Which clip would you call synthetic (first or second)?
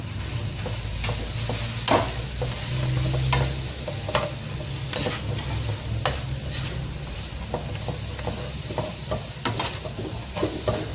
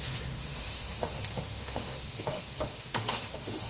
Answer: second